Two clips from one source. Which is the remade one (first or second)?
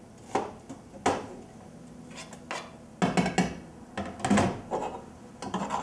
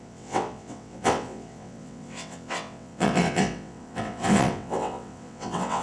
second